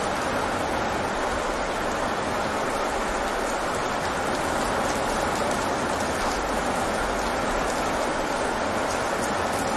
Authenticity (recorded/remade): recorded